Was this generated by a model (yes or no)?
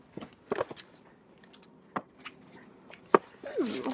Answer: no